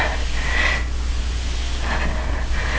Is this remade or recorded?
recorded